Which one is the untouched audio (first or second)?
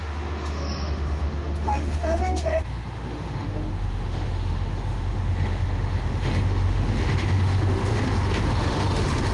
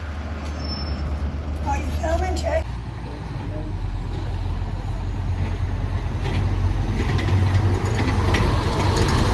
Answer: second